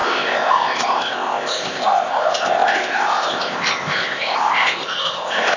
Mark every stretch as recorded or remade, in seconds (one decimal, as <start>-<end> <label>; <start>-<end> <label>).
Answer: 0.0-5.6 remade